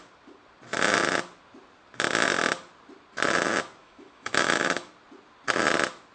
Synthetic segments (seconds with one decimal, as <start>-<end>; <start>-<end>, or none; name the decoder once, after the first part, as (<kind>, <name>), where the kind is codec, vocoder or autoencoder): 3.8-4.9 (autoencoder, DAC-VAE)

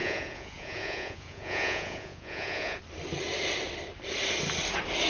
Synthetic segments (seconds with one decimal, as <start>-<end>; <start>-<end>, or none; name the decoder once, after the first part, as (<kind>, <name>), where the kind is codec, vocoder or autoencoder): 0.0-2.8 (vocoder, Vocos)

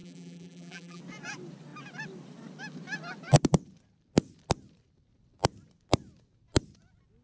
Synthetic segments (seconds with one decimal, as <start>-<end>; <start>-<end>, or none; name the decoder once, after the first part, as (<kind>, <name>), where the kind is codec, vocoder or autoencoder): 0.0-1.0 (vocoder, BigVGAN v2)

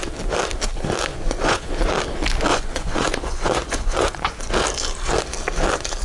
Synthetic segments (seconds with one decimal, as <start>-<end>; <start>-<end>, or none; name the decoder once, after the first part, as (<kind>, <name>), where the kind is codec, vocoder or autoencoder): 1.1-1.7 (vocoder, Vocos); 2.5-4.5

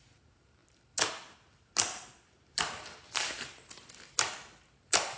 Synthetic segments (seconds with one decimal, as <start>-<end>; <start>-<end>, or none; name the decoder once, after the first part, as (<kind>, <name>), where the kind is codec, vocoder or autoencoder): none

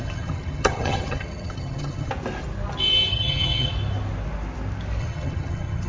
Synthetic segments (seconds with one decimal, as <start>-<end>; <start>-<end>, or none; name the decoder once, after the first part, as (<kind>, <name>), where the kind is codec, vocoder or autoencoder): 0.0-2.1 (vocoder, HiFi-GAN); 3.1-3.7; 5.0-5.9

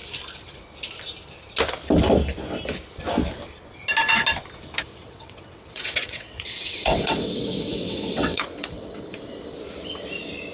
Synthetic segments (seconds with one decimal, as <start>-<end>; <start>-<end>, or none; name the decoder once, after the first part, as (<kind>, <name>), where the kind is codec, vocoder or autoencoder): 4.9-9.0 (vocoder, WaveNeXt)

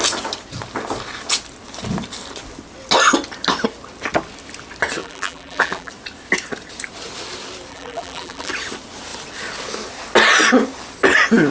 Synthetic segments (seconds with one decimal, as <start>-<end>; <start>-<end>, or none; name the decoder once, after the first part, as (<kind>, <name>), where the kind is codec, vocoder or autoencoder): 5.0-5.9 (vocoder, BigVGAN v2); 7.7-8.5